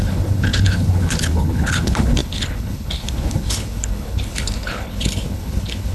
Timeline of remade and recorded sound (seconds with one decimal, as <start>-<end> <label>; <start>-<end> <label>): 0.0-5.9 remade